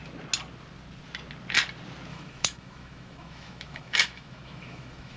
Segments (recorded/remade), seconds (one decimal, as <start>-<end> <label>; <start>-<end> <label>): 0.0-2.1 recorded; 2.1-5.2 remade